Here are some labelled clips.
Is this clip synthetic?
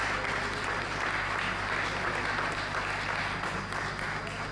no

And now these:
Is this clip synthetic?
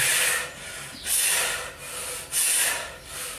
no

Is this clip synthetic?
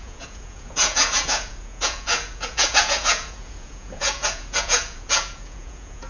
yes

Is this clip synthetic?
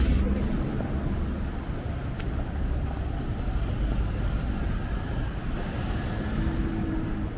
no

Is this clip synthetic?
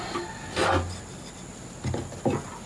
no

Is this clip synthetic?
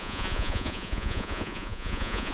yes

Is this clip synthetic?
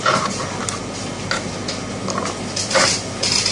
no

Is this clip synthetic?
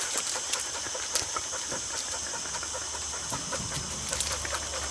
no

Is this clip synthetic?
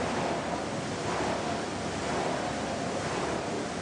no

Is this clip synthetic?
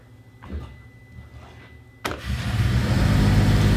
no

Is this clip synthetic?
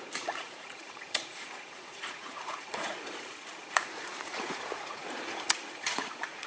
yes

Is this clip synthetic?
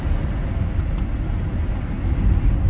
no